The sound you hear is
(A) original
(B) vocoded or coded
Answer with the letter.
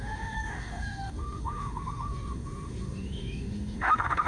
B